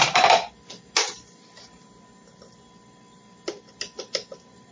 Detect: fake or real real